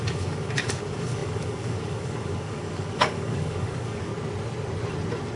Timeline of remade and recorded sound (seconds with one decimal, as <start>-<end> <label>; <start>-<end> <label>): 0.0-4.1 remade; 4.1-5.4 recorded